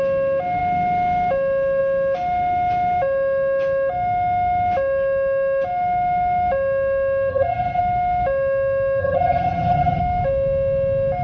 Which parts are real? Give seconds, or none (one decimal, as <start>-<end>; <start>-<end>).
0.0-7.3; 7.8-9.0; 10.0-11.2